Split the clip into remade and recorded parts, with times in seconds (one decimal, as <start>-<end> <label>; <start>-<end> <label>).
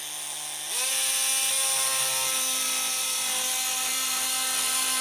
0.0-5.0 recorded